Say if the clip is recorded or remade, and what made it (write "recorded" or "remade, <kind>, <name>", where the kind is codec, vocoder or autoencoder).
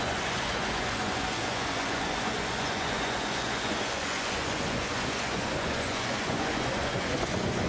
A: remade, vocoder, Vocos